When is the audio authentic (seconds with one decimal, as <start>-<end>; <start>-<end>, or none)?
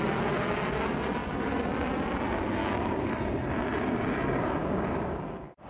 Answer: 0.0-2.6; 3.1-4.6; 5.2-5.7